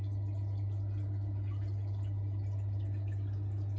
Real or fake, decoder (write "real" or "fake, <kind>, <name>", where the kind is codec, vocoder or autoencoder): real